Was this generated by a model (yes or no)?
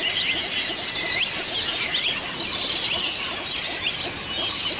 no